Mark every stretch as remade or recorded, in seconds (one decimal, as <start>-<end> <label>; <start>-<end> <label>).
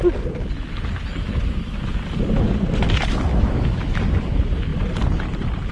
0.0-3.3 recorded; 3.3-4.0 remade; 4.0-5.7 recorded